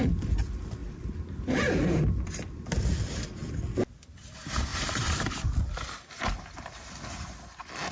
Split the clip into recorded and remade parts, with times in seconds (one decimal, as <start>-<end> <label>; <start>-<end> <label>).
0.0-0.8 recorded; 0.8-2.0 remade; 2.0-4.7 recorded; 4.7-5.3 remade; 5.3-7.9 recorded